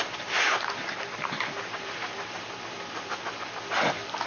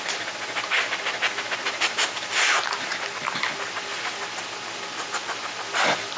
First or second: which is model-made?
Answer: first